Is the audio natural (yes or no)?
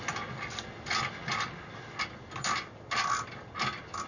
yes